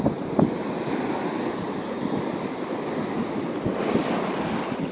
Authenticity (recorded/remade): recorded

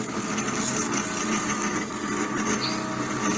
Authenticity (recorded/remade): recorded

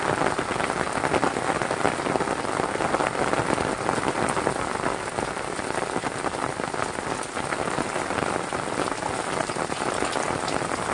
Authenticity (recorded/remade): recorded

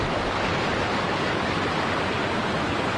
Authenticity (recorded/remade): recorded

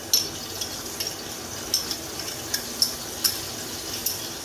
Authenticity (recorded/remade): recorded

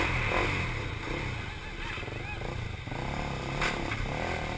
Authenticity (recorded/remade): recorded